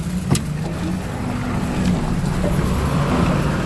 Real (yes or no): yes